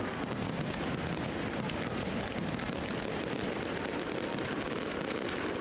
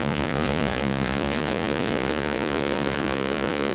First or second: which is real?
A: first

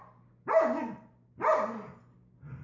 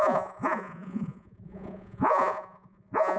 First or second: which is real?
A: first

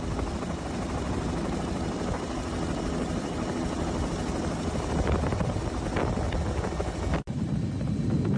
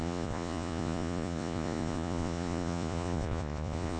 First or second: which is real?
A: first